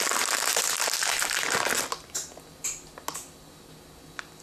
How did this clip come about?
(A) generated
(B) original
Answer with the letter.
B